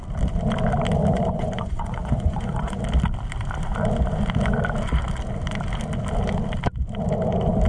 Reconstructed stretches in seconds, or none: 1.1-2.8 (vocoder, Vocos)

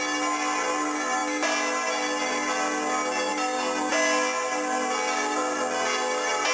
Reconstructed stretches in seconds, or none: none

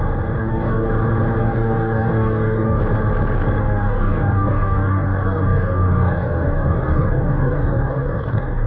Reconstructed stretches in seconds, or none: 0.4-0.9 (codec, DAC); 1.4-2.8; 3.6-8.7

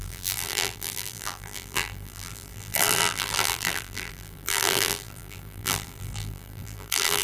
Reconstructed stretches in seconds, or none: 0.0-7.2 (vocoder, BigVGAN v2)

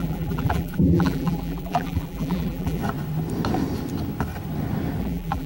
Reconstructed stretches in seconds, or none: 0.0-2.8 (vocoder, BigVGAN v2); 5.0-5.5

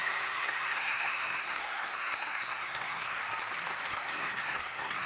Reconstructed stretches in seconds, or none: 0.0-3.2 (codec, SNAC); 3.9-5.1

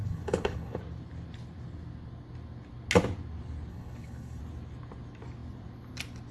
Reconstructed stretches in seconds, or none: 0.0-0.8 (codec, HILCodec); 3.7-4.4

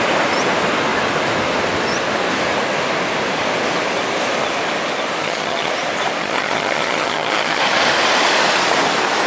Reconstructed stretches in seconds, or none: 5.2-5.7 (vocoder, HiFi-GAN); 6.2-7.6